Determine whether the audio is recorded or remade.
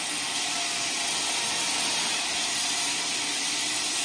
recorded